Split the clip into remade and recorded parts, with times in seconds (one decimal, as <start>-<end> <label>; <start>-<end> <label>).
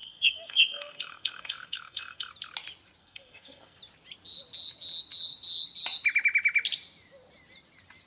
0.0-2.3 remade; 2.3-3.0 recorded; 3.0-3.8 remade; 3.8-8.1 recorded